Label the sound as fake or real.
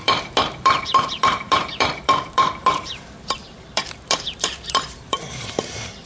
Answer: fake